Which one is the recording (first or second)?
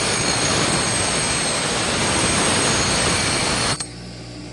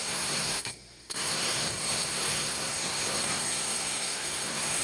first